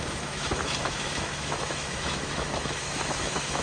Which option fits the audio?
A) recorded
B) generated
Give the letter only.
B